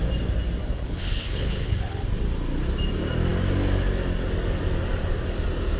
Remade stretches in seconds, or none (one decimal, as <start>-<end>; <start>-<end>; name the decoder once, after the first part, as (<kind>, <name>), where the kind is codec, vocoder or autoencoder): 0.6-2.0 (codec, HILCodec)